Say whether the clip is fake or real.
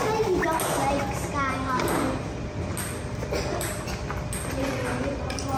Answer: real